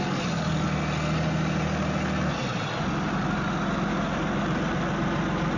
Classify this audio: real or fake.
real